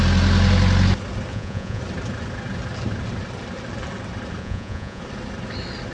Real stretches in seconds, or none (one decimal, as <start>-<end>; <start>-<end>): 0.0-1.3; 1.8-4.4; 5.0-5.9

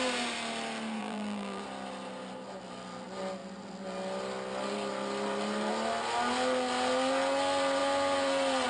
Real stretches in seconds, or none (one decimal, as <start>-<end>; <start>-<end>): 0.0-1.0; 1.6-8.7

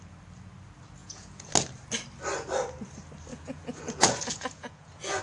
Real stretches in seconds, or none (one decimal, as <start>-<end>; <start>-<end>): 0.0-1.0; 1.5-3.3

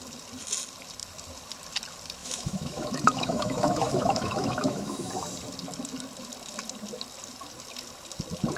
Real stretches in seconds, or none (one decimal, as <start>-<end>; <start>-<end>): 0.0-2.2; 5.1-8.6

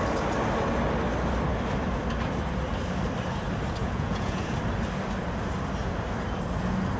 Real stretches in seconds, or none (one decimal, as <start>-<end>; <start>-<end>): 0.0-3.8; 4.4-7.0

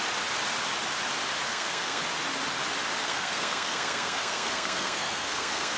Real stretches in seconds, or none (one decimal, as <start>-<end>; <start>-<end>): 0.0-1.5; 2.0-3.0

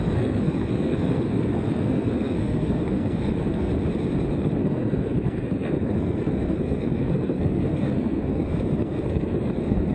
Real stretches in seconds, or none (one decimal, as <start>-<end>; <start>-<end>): 3.7-4.3

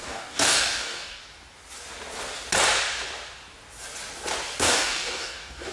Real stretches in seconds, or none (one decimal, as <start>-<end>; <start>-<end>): 1.2-4.6